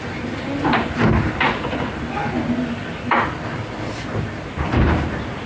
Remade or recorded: recorded